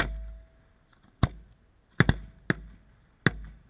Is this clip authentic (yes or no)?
yes